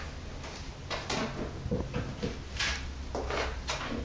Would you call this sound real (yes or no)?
yes